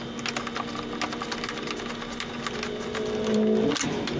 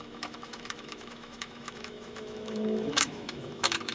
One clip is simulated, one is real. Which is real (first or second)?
first